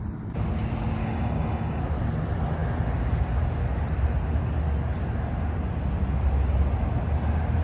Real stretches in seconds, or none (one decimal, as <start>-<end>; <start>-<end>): 0.0-1.0; 1.8-7.6